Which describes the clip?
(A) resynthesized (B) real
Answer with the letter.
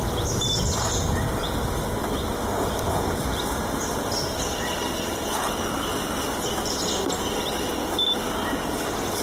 B